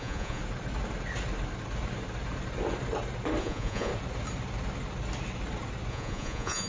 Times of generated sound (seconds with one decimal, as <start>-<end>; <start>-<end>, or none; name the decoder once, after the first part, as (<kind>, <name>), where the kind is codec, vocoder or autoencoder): 0.0-0.4 (vocoder, Vocos); 3.4-3.9; 5.9-6.7